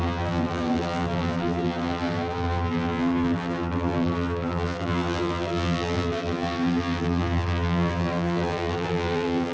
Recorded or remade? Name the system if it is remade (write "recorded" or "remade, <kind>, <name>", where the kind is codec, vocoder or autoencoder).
remade, vocoder, BigVGAN v2